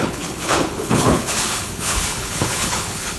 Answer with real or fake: fake